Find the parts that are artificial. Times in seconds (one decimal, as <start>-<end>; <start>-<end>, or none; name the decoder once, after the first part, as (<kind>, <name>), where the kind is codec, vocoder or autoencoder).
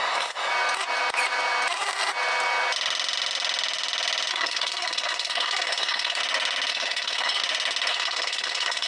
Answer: 0.0-0.5 (codec, SNAC); 4.3-6.2; 6.7-7.4; 7.9-8.9